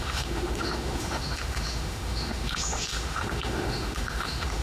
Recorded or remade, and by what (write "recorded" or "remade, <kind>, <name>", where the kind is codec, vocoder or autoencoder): remade, autoencoder, DAC-VAE